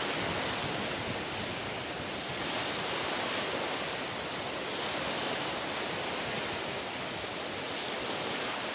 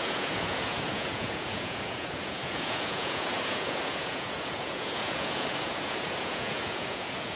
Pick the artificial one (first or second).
second